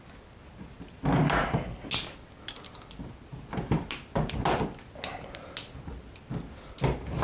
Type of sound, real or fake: real